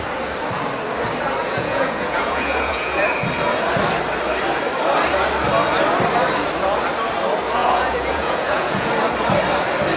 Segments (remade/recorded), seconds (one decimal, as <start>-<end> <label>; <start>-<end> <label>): 0.0-1.4 recorded; 1.4-3.0 remade; 3.0-7.6 recorded; 7.6-8.9 remade; 8.9-10.0 recorded